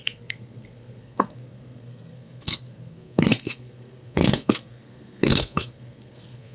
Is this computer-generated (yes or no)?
yes